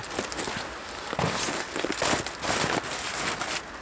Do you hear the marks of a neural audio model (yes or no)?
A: no